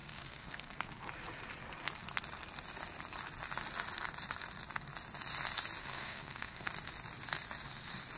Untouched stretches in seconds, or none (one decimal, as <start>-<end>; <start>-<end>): 0.9-5.8; 6.7-8.2

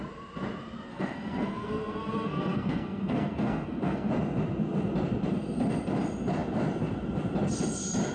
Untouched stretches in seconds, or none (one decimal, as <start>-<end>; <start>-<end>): 0.0-0.9; 4.1-8.1

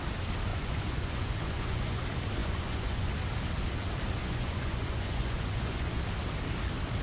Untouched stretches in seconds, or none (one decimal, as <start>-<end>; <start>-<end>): 0.0-0.5; 2.0-2.4; 3.1-4.2; 6.0-7.0

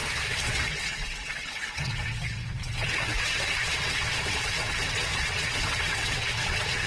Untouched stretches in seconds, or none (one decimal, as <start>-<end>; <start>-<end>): none